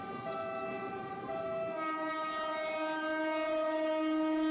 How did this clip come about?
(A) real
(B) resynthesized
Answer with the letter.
A